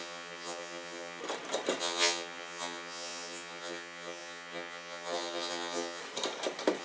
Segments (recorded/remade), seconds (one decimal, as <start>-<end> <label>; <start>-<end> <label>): 0.0-1.2 remade; 1.2-1.8 recorded; 1.8-6.0 remade; 6.0-6.8 recorded